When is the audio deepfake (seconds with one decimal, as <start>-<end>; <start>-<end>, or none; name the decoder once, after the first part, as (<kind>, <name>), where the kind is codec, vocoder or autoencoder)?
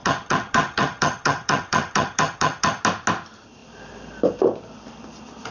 0.0-2.8 (vocoder, HiFi-GAN)